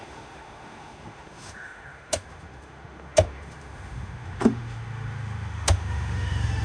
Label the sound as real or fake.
fake